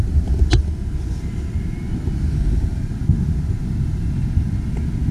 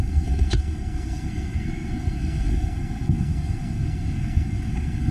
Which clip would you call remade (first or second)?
second